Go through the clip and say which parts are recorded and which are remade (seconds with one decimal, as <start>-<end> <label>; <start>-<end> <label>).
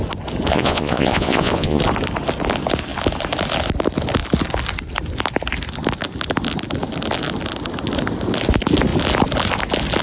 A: 0.0-0.5 recorded; 0.5-1.8 remade; 1.8-10.0 recorded